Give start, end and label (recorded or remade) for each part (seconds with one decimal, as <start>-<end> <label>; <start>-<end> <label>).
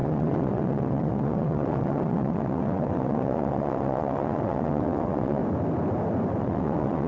0.0-5.4 remade; 5.4-6.4 recorded; 6.4-7.1 remade